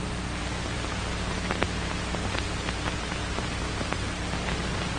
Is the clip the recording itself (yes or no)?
yes